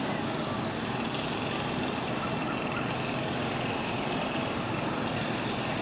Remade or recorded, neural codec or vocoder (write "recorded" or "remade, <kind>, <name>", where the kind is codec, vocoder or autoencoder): recorded